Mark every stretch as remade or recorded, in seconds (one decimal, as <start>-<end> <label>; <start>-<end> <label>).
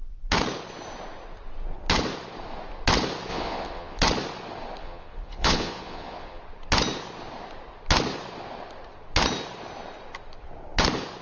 0.0-3.3 recorded; 3.3-4.0 remade; 4.0-4.8 recorded; 4.8-6.4 remade; 6.4-11.2 recorded